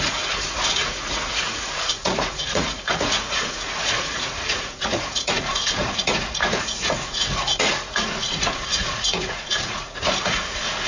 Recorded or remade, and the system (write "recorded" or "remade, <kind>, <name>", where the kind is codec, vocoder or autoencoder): remade, vocoder, Vocos